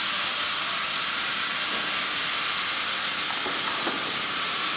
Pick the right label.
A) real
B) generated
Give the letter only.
A